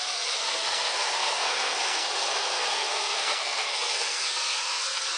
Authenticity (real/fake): fake